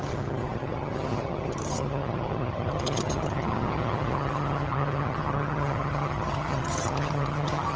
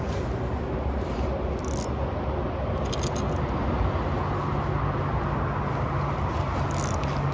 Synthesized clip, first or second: first